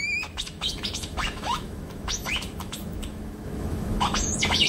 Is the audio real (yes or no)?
no